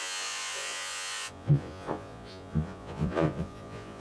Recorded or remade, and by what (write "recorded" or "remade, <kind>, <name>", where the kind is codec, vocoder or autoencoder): remade, vocoder, Vocos